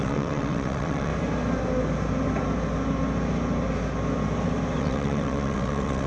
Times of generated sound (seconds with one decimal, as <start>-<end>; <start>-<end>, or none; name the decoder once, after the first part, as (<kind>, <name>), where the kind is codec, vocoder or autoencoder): 0.0-1.1 (vocoder, WaveNeXt); 4.8-6.1